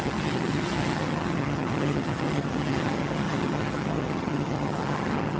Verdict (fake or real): fake